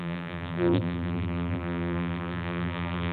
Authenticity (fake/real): fake